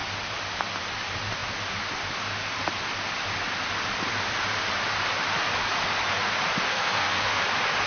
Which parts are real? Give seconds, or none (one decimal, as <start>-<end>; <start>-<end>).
0.0-6.7; 7.4-7.9